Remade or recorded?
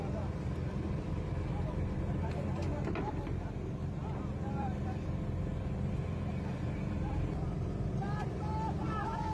remade